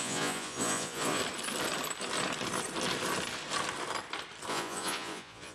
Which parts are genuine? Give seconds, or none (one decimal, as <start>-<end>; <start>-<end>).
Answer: 1.2-4.5